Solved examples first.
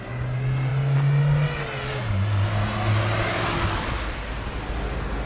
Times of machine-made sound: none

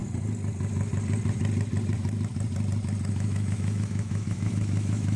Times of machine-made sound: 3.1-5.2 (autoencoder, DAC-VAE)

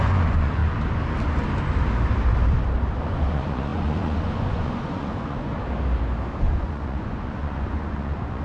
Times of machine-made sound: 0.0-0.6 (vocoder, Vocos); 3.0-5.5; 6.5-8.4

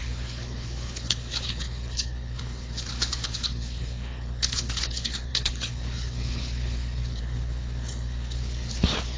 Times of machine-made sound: 0.0-9.2 (codec, HILCodec)

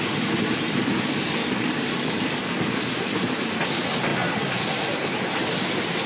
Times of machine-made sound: 1.4-2.5 (codec, DAC)